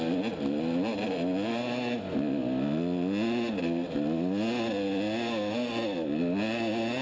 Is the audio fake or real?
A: real